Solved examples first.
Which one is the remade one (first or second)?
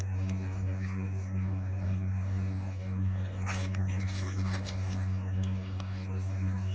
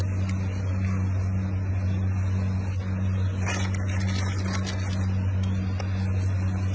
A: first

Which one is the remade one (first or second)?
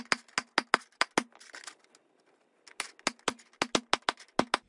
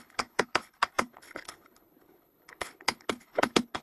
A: second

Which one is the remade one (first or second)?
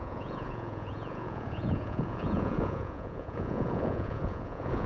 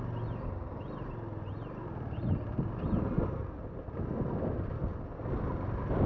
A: first